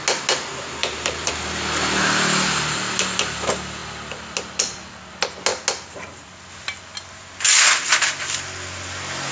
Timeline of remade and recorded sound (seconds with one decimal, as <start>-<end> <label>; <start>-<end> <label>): 0.0-0.8 recorded; 0.8-1.3 remade; 1.3-9.3 recorded